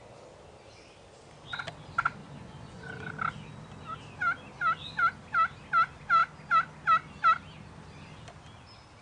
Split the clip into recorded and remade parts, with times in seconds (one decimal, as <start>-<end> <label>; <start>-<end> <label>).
0.0-2.2 recorded; 2.2-3.1 remade; 3.1-9.0 recorded